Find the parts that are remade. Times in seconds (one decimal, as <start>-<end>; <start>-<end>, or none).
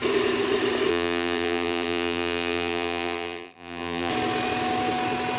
0.9-4.1